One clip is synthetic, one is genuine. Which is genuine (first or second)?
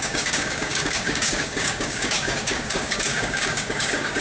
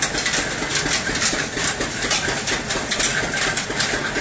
second